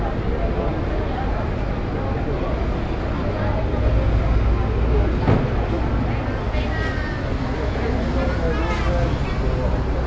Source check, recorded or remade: recorded